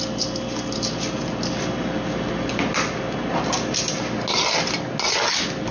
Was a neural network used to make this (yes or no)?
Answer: no